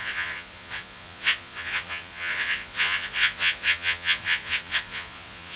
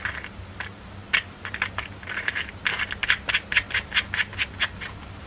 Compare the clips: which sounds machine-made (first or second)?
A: first